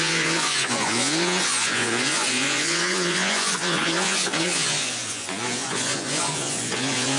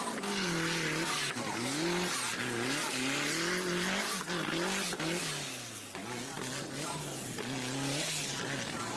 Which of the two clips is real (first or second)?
second